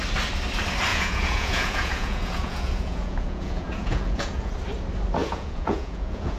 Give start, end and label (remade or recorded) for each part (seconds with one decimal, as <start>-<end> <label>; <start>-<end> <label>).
0.0-0.9 recorded; 0.9-4.5 remade; 4.5-5.2 recorded; 5.2-6.4 remade